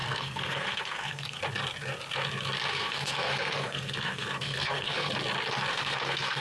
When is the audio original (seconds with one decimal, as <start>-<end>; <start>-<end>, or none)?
1.4-2.7; 5.1-5.7